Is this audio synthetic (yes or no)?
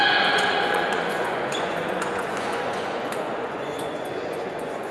yes